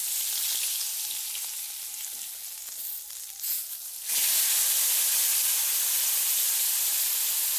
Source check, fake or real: real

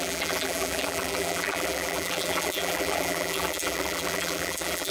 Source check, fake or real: fake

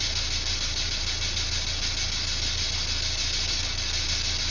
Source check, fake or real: real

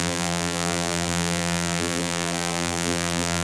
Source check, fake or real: fake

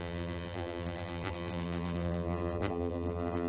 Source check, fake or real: fake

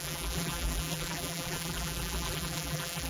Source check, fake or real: fake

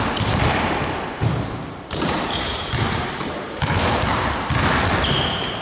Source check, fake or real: fake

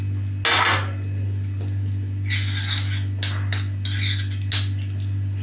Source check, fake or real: real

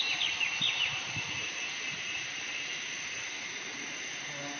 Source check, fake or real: real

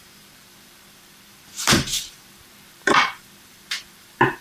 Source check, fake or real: fake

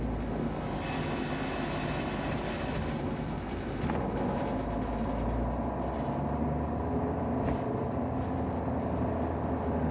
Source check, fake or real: real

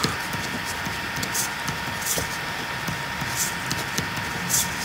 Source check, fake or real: real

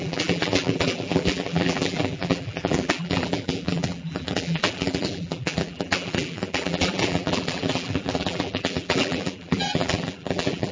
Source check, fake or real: fake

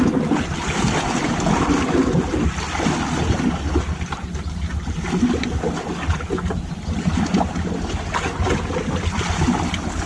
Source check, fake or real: real